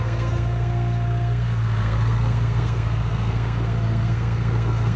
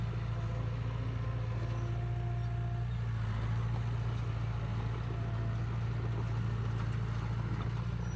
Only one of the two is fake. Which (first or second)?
first